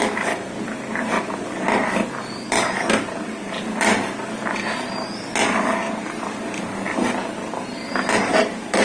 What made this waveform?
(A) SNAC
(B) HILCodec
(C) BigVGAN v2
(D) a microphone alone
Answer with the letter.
D